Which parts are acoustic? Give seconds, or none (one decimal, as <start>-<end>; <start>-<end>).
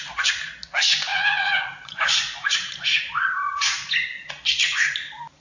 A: 0.0-1.1; 4.3-5.4